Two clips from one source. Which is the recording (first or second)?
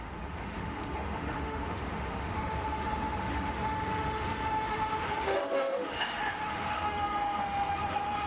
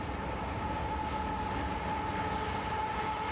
second